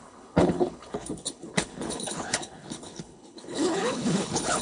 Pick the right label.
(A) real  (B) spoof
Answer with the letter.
B